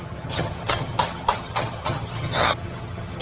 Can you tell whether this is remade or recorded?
remade